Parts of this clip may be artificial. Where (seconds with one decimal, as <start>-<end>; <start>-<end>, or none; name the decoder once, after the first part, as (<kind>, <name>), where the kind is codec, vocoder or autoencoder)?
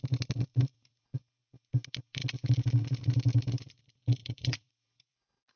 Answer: 4.2-4.7 (vocoder, Vocos)